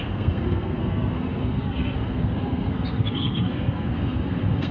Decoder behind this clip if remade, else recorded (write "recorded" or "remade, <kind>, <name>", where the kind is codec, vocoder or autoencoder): remade, codec, SNAC